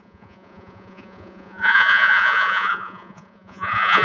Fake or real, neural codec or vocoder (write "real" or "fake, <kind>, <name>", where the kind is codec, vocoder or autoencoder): fake, vocoder, Vocos